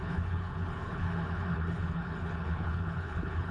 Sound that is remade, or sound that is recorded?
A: remade